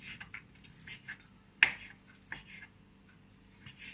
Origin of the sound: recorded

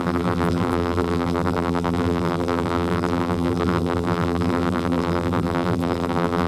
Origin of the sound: remade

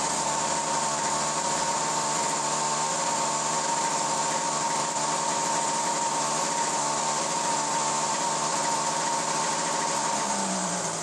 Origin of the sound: remade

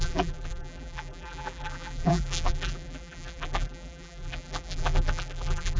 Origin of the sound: remade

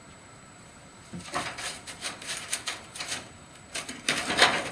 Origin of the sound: remade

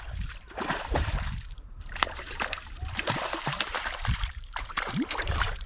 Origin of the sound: remade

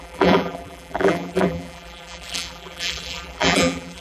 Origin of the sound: remade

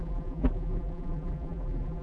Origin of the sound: remade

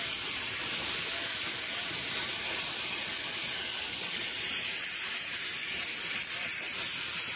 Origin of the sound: recorded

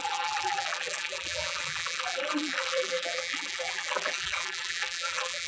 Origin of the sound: remade